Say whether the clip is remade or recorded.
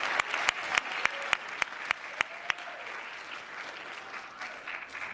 recorded